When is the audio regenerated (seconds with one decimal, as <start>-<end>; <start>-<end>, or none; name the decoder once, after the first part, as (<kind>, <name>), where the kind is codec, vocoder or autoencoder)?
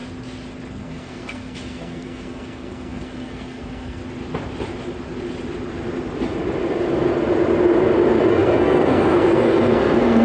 0.7-4.0 (codec, SNAC); 8.3-10.2